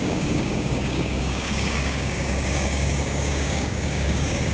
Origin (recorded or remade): remade